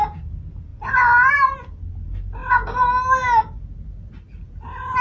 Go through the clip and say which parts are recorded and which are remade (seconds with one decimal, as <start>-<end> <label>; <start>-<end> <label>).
0.0-5.0 recorded